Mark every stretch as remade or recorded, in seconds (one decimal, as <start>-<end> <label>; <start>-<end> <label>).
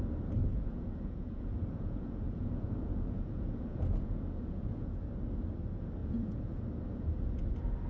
0.0-0.4 recorded; 0.4-5.1 remade; 5.1-6.0 recorded; 6.0-6.6 remade; 6.6-7.9 recorded